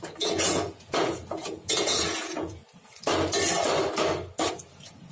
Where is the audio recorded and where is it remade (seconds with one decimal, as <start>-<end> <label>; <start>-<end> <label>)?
0.0-2.6 remade; 2.6-4.5 recorded; 4.5-5.1 remade